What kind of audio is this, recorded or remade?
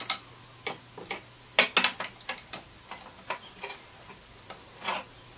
recorded